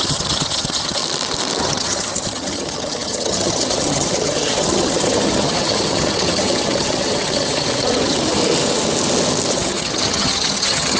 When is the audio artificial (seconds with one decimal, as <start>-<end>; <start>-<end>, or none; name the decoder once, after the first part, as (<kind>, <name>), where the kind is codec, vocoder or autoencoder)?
0.0-1.0 (vocoder, HiFi-GAN); 1.6-8.4; 9.5-11.0